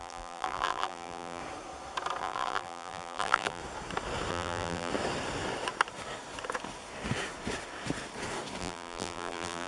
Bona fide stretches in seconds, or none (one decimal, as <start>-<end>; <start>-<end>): 1.4-2.2; 3.6-4.3; 4.9-8.6